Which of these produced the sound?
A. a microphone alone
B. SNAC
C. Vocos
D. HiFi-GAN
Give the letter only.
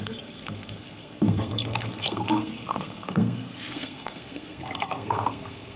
B